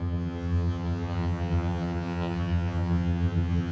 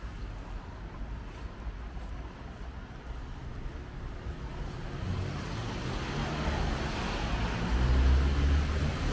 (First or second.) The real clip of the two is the second